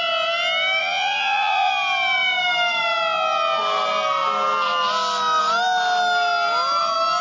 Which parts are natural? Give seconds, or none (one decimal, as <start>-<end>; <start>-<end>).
0.0-0.8; 1.7-7.2

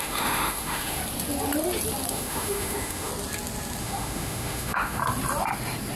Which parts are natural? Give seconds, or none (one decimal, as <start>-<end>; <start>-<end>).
1.0-2.1; 3.1-3.8; 5.0-6.0

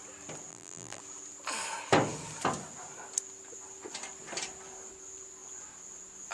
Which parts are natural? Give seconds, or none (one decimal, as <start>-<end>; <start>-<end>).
0.0-0.5; 1.0-6.3

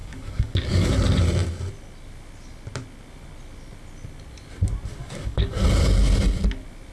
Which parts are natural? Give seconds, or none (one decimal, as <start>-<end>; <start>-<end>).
0.9-5.0; 5.6-6.9